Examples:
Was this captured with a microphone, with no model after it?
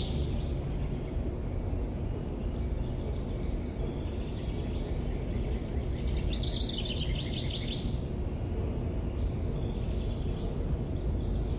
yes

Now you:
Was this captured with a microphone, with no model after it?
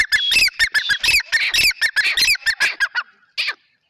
yes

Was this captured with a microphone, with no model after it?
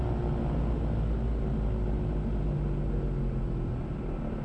yes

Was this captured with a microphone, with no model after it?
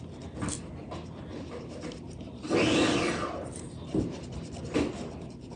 yes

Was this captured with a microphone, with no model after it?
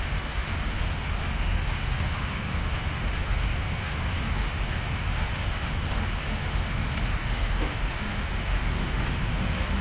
no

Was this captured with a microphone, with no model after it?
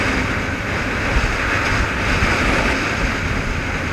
yes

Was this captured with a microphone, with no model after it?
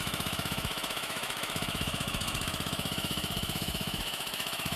no